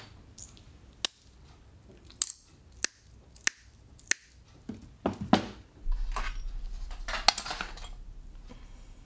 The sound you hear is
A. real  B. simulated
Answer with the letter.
A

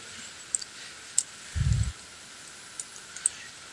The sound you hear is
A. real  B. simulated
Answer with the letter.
A